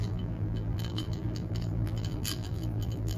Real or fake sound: fake